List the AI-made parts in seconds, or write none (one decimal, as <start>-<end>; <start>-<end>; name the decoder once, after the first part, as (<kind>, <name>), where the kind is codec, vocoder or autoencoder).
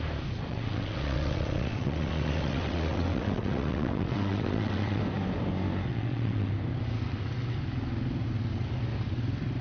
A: 0.5-5.0 (vocoder, WaveNeXt); 5.9-6.5